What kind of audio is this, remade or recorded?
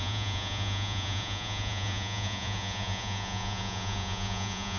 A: remade